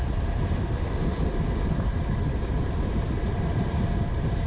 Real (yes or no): yes